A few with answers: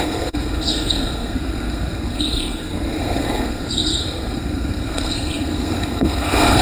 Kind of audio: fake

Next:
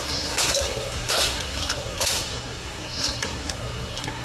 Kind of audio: fake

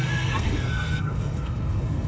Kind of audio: fake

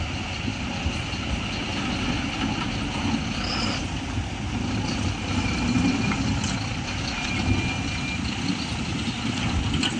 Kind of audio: real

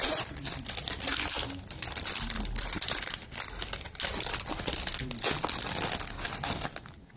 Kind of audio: real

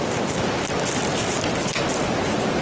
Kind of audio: real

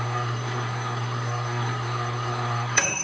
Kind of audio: fake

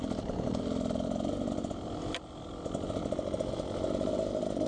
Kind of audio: real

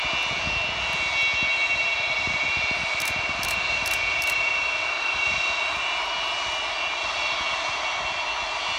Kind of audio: real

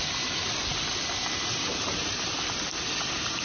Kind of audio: real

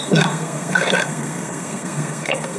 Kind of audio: fake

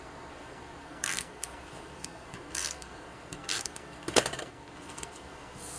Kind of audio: fake